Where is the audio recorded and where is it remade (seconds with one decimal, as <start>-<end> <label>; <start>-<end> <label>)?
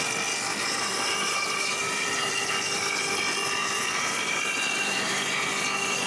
0.0-0.5 recorded; 0.5-2.3 remade; 2.3-3.6 recorded; 3.6-6.1 remade